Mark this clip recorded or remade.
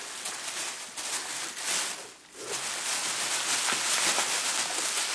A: recorded